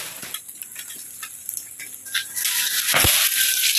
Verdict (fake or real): real